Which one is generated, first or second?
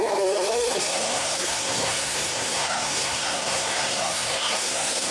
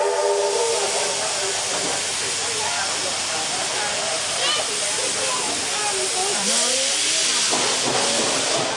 first